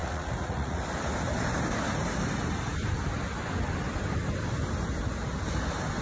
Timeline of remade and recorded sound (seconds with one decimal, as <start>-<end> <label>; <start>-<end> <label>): 0.0-0.8 remade; 0.8-6.0 recorded